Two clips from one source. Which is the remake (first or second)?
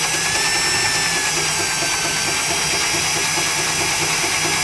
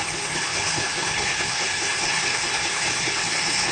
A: second